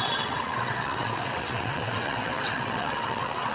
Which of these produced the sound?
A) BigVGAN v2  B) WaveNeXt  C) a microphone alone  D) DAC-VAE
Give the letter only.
B